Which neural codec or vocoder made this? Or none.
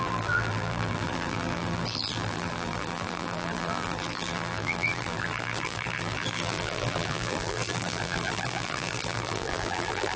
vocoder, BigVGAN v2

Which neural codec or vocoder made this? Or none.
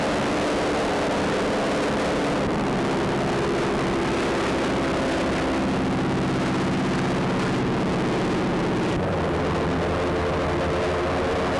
none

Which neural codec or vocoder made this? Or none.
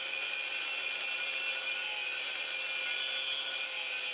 none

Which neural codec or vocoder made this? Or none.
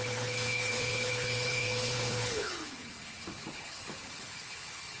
codec, HILCodec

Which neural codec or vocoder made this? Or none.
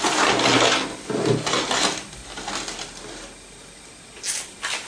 none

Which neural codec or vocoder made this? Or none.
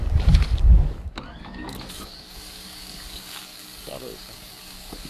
codec, DAC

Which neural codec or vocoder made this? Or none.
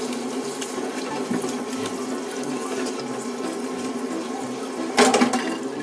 none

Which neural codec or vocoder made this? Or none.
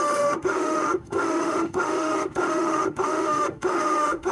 autoencoder, DAC-VAE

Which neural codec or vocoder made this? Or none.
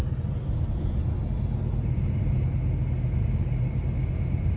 none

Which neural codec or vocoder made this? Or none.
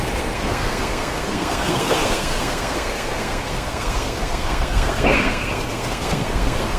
codec, SNAC